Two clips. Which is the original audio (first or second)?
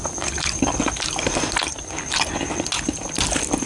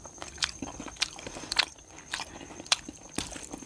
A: first